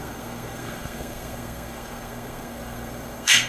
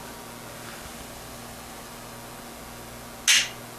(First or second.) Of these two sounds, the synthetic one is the first